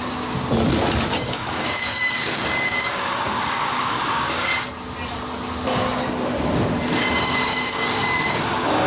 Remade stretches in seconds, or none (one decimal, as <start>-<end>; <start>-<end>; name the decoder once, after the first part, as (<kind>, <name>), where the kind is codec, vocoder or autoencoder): 1.1-4.5 (codec, DAC); 7.2-8.9